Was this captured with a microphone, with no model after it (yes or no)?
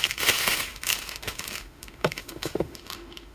no